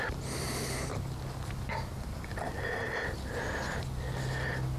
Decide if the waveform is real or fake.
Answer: real